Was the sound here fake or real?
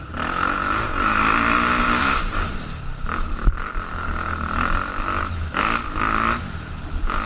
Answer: real